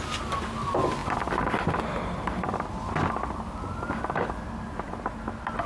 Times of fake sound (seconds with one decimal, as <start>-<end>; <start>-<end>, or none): none